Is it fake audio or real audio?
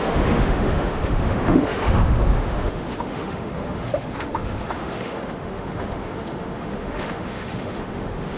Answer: fake